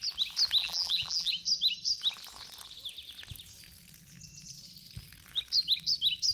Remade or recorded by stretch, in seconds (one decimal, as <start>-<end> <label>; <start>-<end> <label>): 0.0-0.6 recorded; 0.6-1.3 remade; 1.3-6.3 recorded